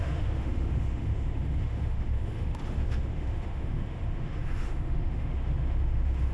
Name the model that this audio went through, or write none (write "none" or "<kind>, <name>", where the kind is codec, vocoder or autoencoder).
autoencoder, DAC-VAE